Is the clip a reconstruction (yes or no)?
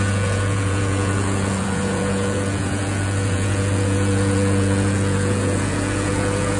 yes